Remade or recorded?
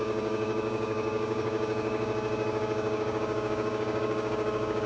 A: remade